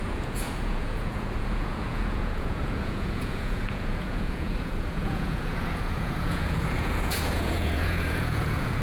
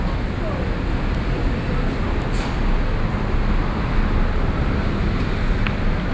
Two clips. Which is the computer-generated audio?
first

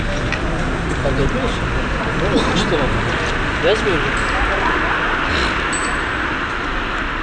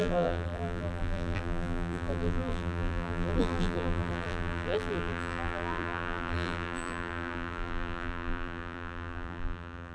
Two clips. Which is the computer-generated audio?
second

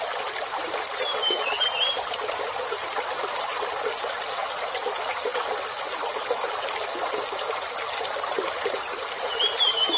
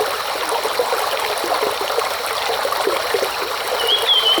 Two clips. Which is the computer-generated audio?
first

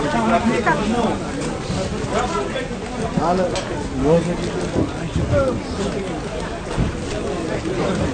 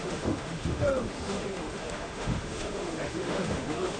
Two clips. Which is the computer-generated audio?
second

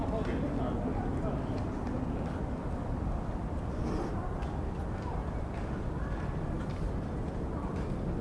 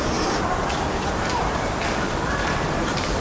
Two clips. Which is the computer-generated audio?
second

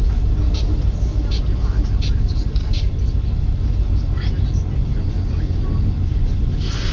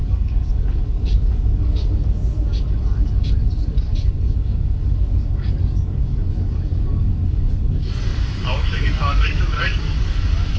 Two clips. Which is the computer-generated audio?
second